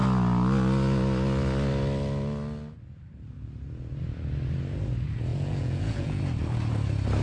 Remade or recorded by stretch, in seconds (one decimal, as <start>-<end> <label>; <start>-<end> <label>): 0.0-5.3 recorded; 5.3-6.2 remade; 6.2-7.2 recorded